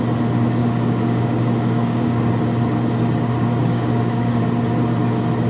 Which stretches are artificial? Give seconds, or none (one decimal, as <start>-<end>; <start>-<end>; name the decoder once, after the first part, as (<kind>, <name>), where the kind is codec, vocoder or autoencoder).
0.6-2.3 (codec, DAC); 3.6-4.4